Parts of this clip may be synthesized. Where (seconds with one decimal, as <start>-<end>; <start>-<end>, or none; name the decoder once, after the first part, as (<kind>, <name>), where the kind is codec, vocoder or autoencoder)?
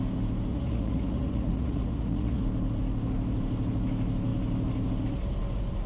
0.5-2.4 (vocoder, Vocos)